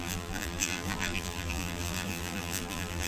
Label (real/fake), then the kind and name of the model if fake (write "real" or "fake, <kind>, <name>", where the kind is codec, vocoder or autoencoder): fake, vocoder, BigVGAN v2